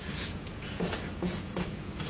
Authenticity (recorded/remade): remade